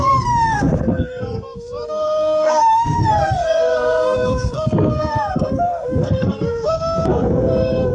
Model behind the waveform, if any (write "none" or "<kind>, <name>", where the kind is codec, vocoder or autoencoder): codec, SNAC